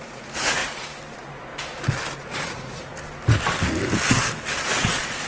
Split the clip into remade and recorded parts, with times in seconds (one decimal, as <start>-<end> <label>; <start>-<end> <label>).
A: 0.0-0.6 remade; 0.6-1.1 recorded; 1.1-1.5 remade; 1.5-2.1 recorded; 2.1-2.9 remade; 2.9-4.7 recorded; 4.7-5.3 remade